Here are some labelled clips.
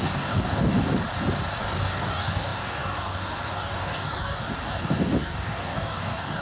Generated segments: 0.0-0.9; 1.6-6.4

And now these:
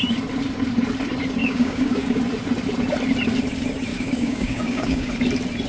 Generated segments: 1.4-2.2; 3.9-5.1

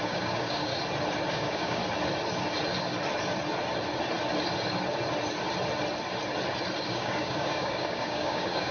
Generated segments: 0.0-0.7; 1.3-1.8; 6.9-8.7

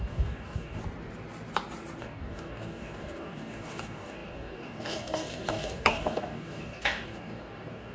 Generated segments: 0.0-0.8; 2.0-7.9

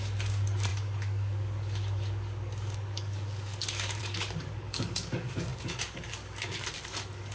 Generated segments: 0.0-7.3